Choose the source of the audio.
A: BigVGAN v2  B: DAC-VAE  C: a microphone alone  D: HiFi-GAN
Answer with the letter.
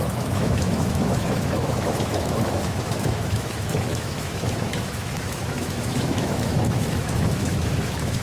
B